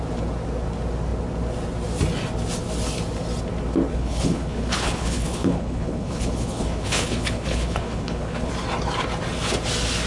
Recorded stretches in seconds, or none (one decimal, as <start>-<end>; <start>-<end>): 0.0-3.9; 8.5-10.1